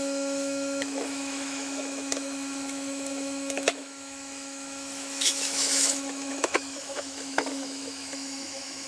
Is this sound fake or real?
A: fake